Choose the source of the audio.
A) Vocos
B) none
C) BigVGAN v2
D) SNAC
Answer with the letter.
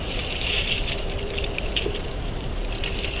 C